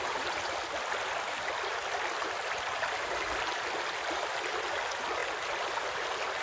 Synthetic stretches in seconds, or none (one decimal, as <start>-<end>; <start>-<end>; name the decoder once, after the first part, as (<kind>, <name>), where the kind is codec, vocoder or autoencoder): none